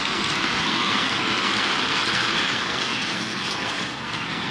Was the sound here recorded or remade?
remade